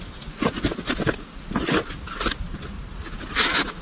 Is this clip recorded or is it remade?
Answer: recorded